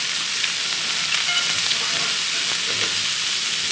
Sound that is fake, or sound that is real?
real